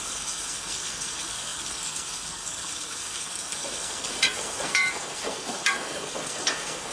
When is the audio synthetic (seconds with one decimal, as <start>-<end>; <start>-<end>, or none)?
0.0-6.9